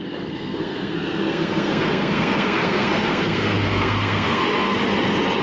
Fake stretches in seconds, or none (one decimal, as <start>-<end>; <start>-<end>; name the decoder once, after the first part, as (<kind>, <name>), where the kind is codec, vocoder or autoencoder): 0.0-4.4 (codec, SNAC)

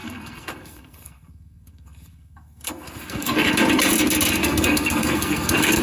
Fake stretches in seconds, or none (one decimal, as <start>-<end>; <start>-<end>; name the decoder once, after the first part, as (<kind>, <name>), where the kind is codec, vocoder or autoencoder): 0.0-3.5 (codec, SNAC); 4.4-5.8

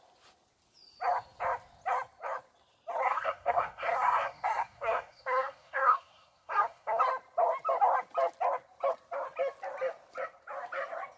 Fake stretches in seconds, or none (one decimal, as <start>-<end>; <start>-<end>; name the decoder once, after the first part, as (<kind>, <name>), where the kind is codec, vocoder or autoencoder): 3.0-7.0 (codec, SNAC)

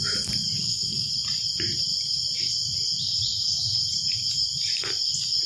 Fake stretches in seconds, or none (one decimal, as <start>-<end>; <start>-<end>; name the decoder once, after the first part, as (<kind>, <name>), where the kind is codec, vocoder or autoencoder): 0.6-1.1 (codec, SNAC)

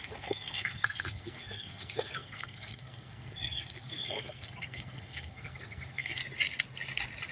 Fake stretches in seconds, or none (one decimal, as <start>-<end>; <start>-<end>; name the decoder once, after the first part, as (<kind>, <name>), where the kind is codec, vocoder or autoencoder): 0.0-6.2 (codec, SNAC)

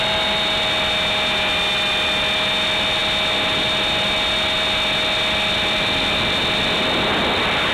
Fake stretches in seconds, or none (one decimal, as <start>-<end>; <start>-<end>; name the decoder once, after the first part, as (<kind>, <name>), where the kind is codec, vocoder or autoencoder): none

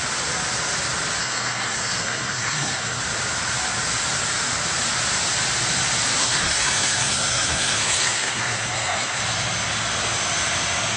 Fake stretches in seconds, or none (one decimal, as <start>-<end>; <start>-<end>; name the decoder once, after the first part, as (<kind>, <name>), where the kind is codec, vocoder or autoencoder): 1.2-3.0 (codec, SNAC); 6.2-9.2

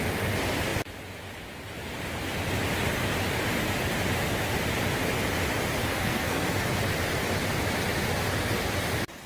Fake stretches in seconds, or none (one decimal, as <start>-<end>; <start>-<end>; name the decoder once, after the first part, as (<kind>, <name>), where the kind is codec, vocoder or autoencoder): 5.9-6.7 (codec, SNAC)